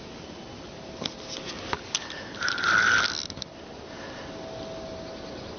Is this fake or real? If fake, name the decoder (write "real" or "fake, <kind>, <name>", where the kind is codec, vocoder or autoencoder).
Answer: real